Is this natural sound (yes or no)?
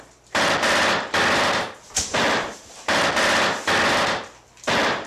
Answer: yes